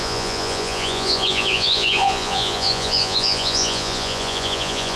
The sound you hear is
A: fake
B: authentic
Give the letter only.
A